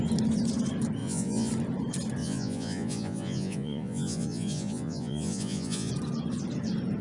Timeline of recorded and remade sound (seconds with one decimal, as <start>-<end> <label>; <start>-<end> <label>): 0.0-1.0 recorded; 1.0-1.5 remade; 1.5-2.2 recorded; 2.2-5.9 remade; 5.9-7.0 recorded